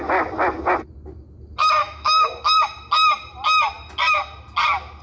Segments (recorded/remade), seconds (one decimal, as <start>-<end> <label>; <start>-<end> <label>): 0.0-1.8 recorded; 1.8-2.3 remade; 2.3-5.0 recorded